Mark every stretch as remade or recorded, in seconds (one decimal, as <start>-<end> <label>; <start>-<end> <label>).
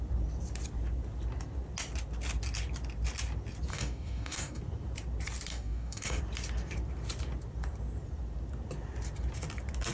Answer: 0.0-3.7 recorded; 3.7-4.6 remade; 4.6-5.5 recorded; 5.5-6.2 remade; 6.2-9.9 recorded